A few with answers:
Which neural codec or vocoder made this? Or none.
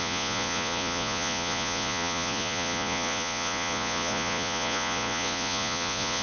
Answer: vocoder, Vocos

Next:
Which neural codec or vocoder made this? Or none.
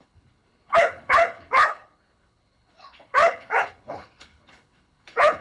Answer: codec, HILCodec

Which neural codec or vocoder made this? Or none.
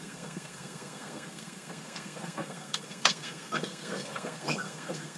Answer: codec, SNAC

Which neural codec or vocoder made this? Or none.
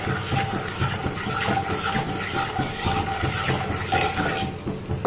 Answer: none